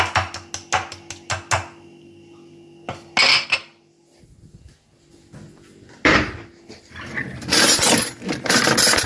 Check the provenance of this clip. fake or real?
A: real